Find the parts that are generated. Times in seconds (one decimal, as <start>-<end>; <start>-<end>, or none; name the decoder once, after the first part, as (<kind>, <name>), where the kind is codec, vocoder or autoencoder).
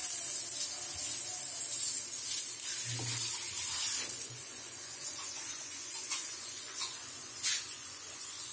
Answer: 4.1-8.5 (vocoder, Vocos)